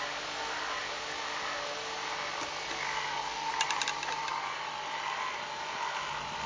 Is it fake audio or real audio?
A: real